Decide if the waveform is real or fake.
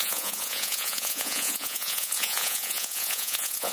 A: fake